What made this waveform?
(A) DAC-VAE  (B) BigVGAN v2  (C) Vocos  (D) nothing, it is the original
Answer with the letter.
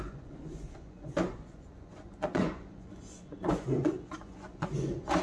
C